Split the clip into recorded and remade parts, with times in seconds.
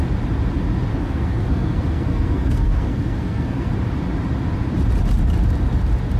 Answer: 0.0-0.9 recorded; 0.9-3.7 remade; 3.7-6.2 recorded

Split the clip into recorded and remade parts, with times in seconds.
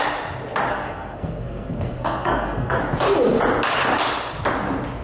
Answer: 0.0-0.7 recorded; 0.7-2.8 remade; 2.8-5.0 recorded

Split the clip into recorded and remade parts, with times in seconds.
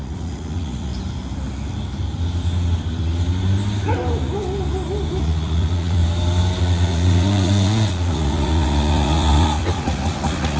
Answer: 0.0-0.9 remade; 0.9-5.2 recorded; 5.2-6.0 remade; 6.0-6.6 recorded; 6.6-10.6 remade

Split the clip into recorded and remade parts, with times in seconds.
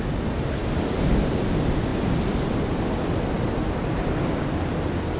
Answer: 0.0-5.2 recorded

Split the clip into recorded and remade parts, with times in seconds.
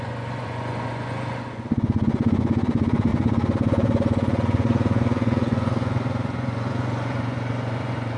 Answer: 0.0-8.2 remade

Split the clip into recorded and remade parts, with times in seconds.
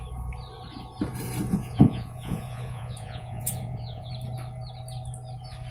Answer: 0.0-1.5 recorded; 1.5-4.1 remade; 4.1-5.7 recorded